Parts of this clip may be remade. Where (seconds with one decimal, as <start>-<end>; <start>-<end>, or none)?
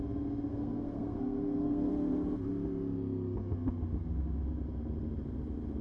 0.5-1.9